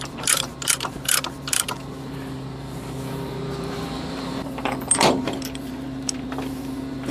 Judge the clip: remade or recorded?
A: remade